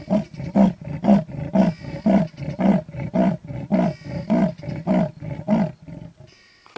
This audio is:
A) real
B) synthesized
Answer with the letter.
A